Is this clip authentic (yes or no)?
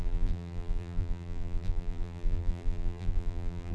no